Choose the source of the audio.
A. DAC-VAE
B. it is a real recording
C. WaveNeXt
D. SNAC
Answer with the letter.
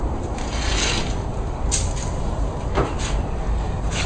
B